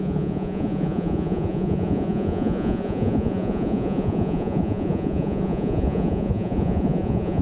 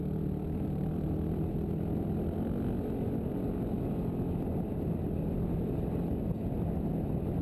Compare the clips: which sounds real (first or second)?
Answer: second